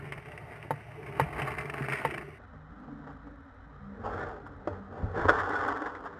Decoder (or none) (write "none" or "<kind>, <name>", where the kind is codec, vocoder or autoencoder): none